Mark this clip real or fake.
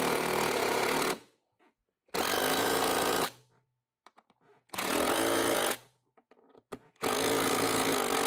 fake